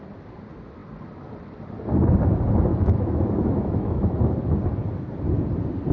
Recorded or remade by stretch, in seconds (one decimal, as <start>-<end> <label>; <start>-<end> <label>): 0.0-2.7 recorded; 2.7-4.2 remade; 4.2-5.9 recorded